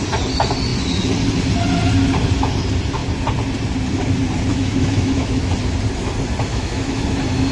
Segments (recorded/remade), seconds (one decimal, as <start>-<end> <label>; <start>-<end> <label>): 0.0-4.5 recorded; 4.5-5.5 remade; 5.5-6.5 recorded; 6.5-7.0 remade; 7.0-7.5 recorded